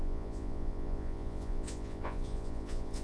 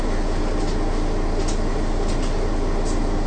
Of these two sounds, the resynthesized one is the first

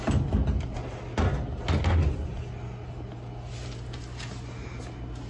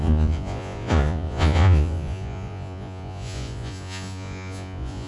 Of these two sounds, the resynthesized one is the second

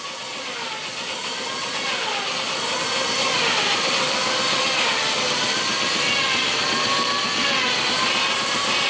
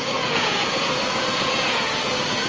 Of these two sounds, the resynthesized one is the second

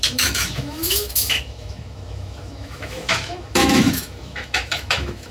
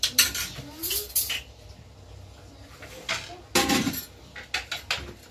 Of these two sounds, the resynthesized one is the first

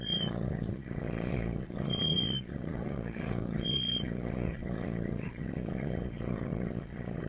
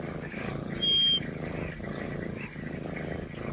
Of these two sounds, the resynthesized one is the first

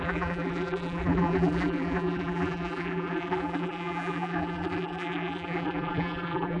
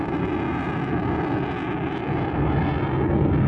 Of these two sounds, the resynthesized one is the first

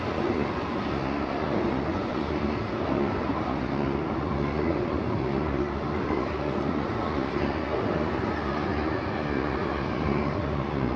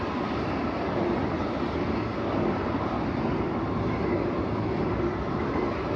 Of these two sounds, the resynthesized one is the first